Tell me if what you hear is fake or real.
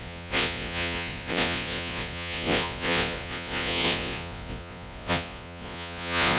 fake